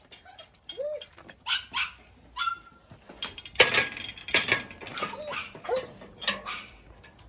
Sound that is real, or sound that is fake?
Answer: real